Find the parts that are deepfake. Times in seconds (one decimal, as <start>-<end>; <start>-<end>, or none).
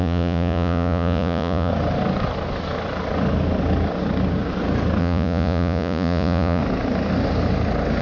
0.0-1.7; 5.0-6.6